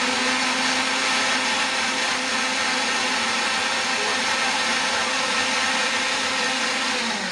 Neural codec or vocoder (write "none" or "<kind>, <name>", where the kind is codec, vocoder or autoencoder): none